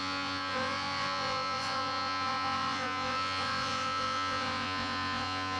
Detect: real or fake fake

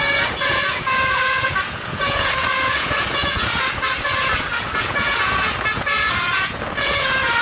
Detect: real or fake fake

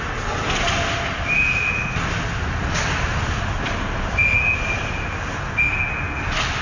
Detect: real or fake real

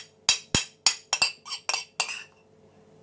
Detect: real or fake real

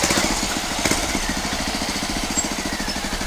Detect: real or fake real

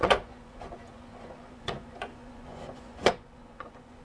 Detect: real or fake fake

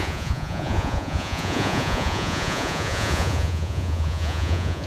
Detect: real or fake fake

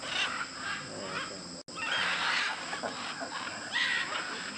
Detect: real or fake real